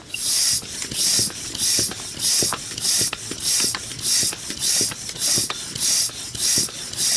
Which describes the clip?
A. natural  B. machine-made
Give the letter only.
A